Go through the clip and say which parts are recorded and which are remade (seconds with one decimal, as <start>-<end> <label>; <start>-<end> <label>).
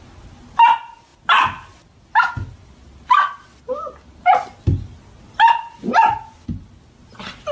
0.0-7.5 recorded